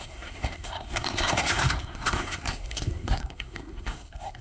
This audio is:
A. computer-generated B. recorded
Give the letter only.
A